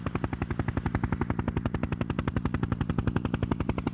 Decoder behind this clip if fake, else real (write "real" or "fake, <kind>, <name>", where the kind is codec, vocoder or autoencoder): fake, vocoder, BigVGAN v2